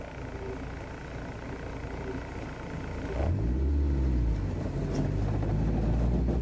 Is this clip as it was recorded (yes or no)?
yes